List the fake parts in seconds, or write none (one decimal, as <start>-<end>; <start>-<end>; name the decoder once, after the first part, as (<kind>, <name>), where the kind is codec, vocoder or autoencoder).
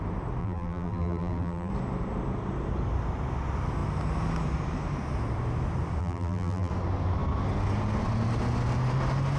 0.4-1.7 (vocoder, BigVGAN v2); 6.0-6.7